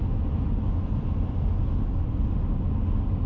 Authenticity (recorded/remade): recorded